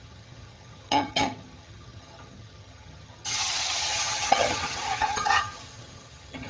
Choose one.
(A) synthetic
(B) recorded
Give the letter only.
A